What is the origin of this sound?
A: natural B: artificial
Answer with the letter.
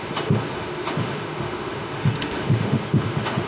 B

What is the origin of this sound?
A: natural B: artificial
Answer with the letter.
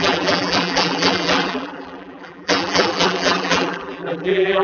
B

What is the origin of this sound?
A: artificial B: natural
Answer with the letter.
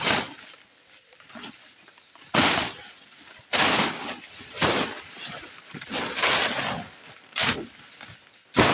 B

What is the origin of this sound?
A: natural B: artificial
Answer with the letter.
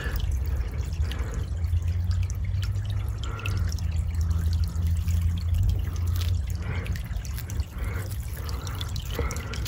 A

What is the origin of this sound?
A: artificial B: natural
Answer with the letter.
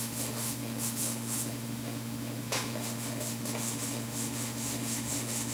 A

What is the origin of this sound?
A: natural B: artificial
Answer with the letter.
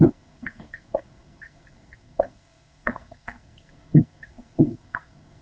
B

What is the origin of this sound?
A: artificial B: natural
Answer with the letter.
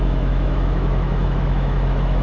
A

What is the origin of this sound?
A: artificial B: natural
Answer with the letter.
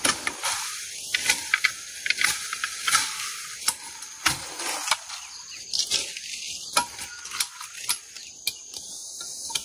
B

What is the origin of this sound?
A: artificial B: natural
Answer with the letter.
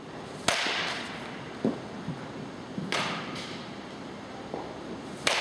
B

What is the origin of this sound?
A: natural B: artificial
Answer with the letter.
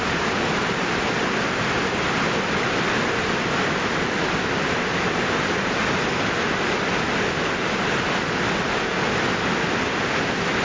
A